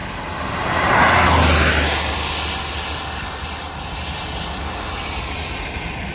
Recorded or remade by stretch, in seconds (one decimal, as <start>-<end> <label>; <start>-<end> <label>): 0.0-6.1 recorded